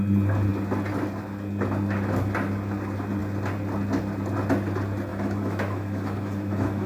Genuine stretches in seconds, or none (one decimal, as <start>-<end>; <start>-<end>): 0.0-5.1